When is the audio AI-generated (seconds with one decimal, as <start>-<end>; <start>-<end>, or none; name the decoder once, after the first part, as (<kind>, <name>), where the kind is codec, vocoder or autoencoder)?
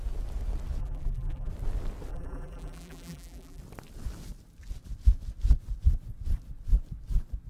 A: 0.8-1.5 (vocoder, BigVGAN v2); 2.1-3.6